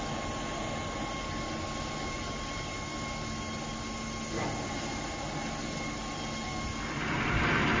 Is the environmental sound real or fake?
real